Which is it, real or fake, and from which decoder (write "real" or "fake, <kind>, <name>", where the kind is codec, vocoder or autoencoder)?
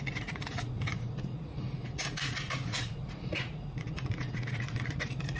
fake, vocoder, Vocos